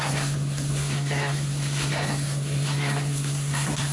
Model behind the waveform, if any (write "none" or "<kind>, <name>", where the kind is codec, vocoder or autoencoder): codec, SNAC